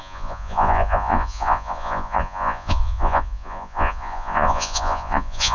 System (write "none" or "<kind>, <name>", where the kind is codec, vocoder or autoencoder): vocoder, Vocos